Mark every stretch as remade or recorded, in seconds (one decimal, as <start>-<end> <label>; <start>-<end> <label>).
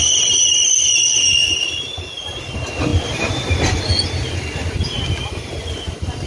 0.0-6.3 recorded